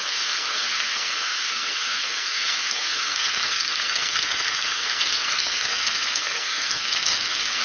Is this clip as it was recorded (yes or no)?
no